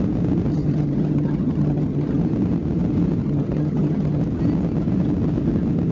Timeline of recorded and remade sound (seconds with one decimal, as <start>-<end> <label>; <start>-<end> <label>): 0.0-0.5 recorded; 0.5-2.2 remade; 2.2-3.2 recorded; 3.2-4.2 remade; 4.2-5.9 recorded